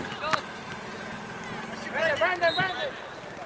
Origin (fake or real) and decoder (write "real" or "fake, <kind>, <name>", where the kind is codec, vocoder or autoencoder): real